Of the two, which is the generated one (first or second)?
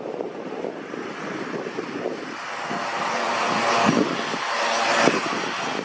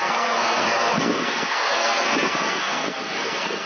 second